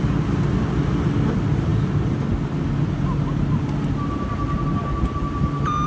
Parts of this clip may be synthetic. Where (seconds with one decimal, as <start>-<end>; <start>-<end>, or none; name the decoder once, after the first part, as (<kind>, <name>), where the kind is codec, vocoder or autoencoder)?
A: none